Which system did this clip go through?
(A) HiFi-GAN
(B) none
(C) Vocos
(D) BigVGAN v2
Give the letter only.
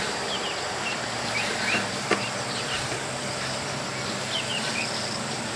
D